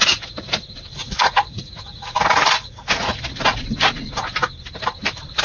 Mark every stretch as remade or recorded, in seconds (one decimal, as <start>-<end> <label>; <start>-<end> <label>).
0.0-1.0 recorded; 1.0-3.2 remade; 3.2-5.4 recorded